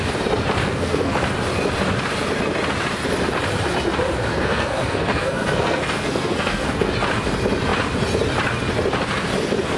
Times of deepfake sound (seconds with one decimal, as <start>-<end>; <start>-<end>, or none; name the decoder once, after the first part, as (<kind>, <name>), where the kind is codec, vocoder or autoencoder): 0.6-1.1 (codec, SNAC); 4.3-6.9